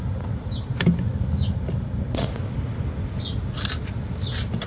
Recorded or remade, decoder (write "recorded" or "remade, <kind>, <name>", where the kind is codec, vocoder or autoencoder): recorded